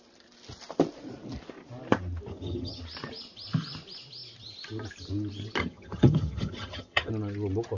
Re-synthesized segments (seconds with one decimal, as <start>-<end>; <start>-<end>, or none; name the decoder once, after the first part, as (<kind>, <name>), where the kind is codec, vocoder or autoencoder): 2.3-2.8 (vocoder, HiFi-GAN); 5.6-7.1